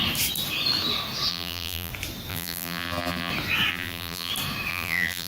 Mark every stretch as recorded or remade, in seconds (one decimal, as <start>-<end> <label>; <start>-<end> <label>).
0.0-1.3 recorded; 1.3-1.9 remade; 1.9-2.3 recorded; 2.3-3.3 remade; 3.3-3.7 recorded; 3.7-4.3 remade; 4.3-4.7 recorded; 4.7-5.3 remade